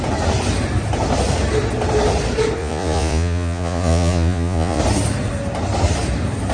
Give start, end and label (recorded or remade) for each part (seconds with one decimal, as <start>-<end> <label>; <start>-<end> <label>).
0.0-2.6 recorded; 2.6-4.8 remade; 4.8-6.5 recorded